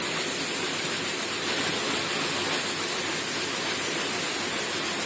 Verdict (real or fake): real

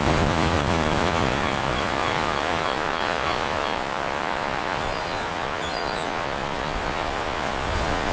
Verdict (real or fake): fake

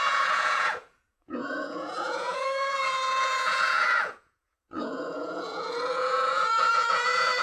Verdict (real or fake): fake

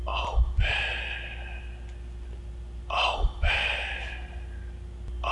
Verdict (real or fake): real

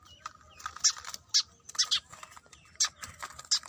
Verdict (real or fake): real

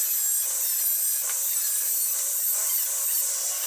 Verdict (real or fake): real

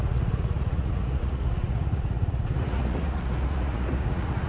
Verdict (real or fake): fake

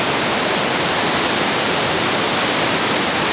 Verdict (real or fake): real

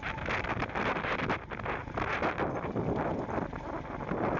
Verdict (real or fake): real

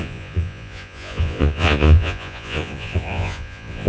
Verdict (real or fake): fake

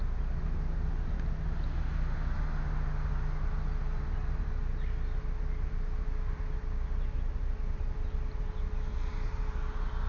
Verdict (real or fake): real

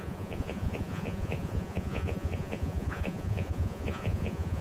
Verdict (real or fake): fake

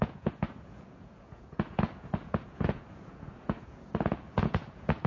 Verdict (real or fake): fake